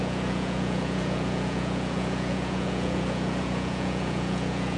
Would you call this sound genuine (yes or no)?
no